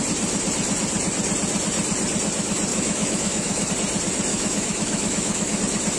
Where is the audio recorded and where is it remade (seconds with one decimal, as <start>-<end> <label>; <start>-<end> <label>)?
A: 0.0-2.7 recorded; 2.7-3.7 remade; 3.7-4.3 recorded; 4.3-5.6 remade; 5.6-6.0 recorded